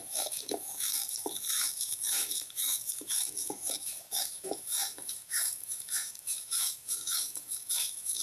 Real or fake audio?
fake